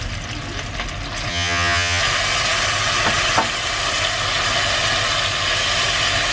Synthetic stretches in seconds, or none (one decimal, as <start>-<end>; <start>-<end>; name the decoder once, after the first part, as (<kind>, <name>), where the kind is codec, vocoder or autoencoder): 1.3-2.0 (vocoder, HiFi-GAN)